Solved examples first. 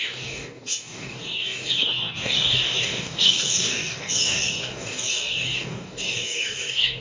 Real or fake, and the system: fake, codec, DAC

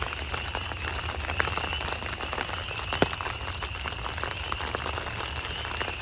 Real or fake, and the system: real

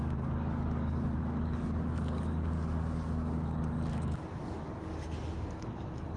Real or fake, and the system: fake, codec, DAC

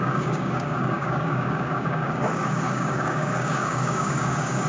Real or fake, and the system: fake, codec, DAC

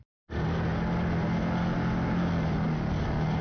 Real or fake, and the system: real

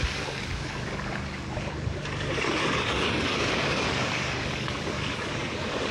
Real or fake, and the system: fake, codec, DAC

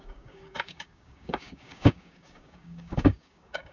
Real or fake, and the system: fake, codec, DAC